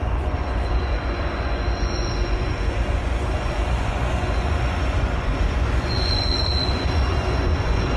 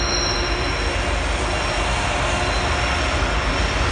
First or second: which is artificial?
first